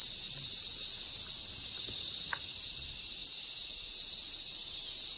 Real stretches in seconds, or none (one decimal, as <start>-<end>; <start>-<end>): 0.0-5.2